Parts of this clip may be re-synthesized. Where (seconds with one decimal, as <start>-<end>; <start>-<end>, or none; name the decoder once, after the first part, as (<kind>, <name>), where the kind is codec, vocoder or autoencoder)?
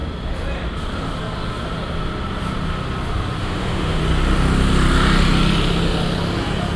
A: 3.4-4.0 (autoencoder, DAC-VAE)